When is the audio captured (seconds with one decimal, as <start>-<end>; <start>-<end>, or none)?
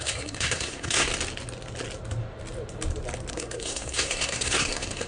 1.1-3.3